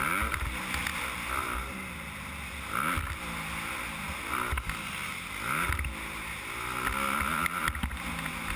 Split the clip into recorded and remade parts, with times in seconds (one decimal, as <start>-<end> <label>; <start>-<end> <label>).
0.0-8.6 recorded